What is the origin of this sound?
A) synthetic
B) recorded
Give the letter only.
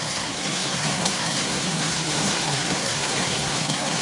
A